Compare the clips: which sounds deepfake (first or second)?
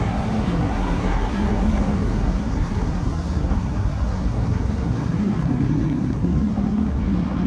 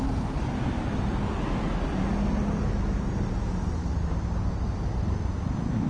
first